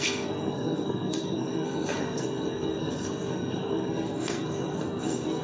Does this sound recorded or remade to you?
remade